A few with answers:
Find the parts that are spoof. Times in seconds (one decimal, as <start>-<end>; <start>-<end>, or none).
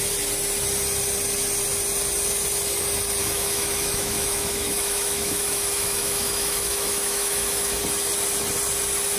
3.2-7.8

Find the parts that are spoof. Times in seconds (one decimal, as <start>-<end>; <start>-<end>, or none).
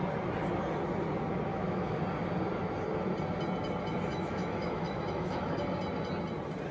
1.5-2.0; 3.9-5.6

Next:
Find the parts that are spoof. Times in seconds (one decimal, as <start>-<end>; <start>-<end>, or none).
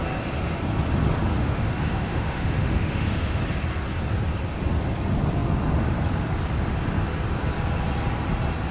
1.3-3.4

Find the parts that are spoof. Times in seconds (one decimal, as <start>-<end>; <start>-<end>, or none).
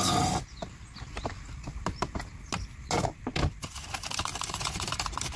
none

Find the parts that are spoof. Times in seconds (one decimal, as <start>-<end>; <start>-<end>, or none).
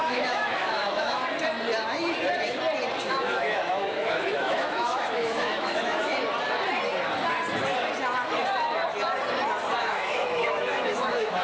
0.0-1.2; 3.1-6.1; 9.8-11.4